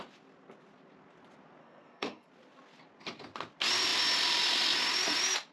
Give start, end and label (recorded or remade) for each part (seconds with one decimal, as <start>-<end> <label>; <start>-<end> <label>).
0.0-1.6 recorded; 1.6-2.3 remade; 2.3-5.5 recorded